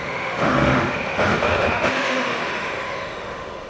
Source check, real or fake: fake